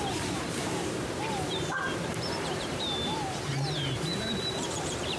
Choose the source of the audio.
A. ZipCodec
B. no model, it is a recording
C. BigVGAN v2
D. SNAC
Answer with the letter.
C